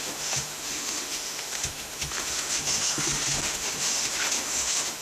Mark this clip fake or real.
fake